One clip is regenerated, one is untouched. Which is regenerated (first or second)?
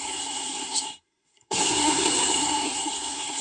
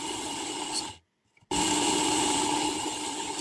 first